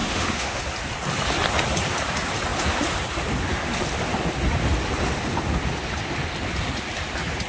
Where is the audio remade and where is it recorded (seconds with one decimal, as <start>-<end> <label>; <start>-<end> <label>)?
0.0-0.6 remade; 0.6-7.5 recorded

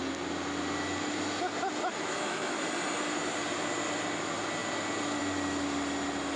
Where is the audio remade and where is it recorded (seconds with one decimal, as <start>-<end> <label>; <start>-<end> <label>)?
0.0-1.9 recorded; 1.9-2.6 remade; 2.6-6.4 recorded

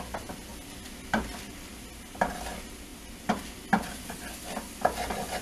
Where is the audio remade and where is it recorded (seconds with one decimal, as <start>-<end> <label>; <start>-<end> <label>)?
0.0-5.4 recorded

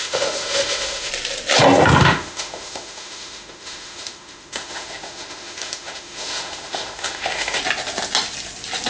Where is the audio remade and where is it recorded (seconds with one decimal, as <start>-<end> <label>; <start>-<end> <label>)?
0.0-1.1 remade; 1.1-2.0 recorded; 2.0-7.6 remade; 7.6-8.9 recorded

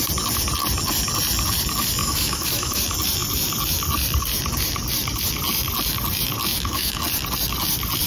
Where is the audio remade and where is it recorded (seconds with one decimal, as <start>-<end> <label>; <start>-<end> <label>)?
0.0-2.0 recorded; 2.0-2.8 remade; 2.8-6.5 recorded; 6.5-7.0 remade; 7.0-8.1 recorded

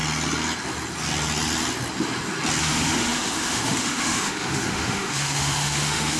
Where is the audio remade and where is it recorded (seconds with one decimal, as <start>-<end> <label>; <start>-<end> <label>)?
0.0-2.6 recorded; 2.6-6.2 remade